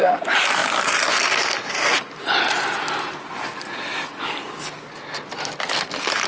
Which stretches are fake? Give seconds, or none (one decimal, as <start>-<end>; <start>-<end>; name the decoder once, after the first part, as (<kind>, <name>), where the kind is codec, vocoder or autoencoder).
none